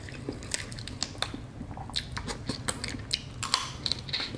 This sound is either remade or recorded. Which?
recorded